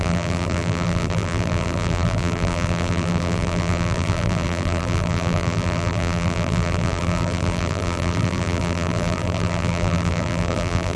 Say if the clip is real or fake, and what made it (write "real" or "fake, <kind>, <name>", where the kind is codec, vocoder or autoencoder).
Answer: fake, vocoder, BigVGAN v2